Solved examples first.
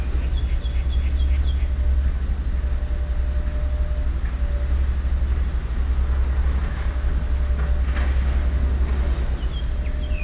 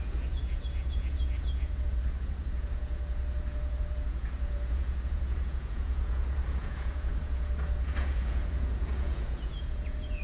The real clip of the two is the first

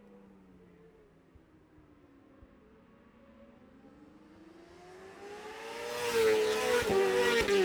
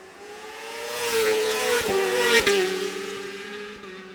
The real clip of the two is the first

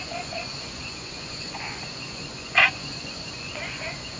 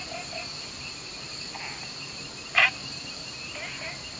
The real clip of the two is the second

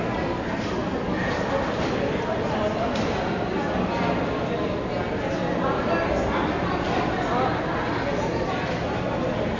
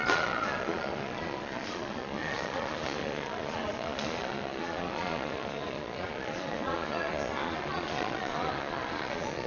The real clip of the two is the first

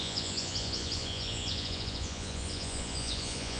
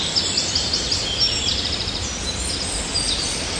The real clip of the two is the second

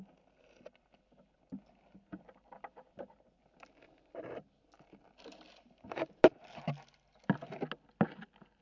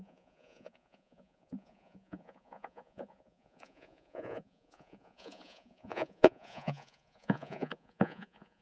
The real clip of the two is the first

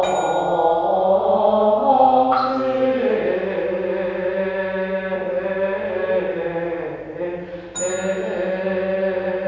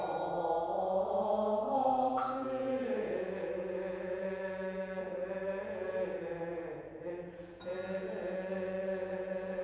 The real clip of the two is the first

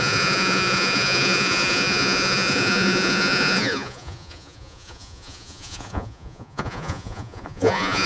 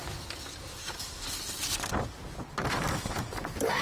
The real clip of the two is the second